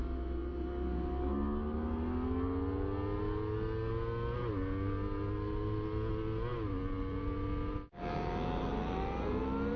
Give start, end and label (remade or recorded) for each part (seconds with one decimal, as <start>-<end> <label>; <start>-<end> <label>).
0.0-9.8 recorded